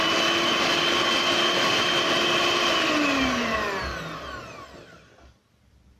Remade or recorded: recorded